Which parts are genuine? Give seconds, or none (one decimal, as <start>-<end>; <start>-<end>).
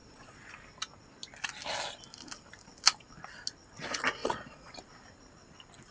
0.5-4.2; 4.7-5.9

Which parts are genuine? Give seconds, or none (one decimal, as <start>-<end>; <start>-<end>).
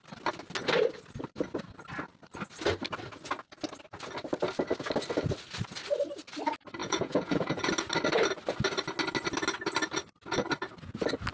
0.0-6.8; 7.7-11.3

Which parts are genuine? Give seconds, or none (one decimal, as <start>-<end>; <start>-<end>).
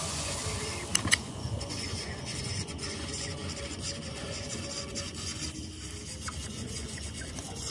0.4-1.1; 5.3-6.5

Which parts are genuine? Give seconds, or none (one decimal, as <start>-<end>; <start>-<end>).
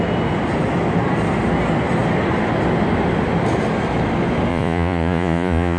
0.0-4.5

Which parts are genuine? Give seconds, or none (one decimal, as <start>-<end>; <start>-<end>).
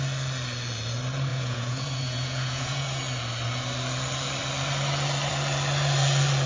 0.0-1.3; 3.0-6.5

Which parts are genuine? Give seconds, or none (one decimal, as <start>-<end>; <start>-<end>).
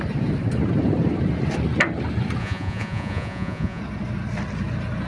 0.0-2.4; 3.8-5.1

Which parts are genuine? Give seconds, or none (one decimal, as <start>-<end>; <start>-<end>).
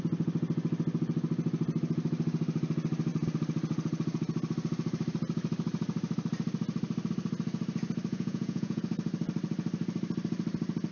0.0-8.1; 8.8-10.9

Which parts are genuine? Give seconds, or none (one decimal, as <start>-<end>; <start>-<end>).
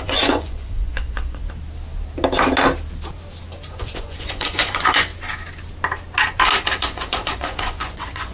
1.4-3.8; 5.1-6.8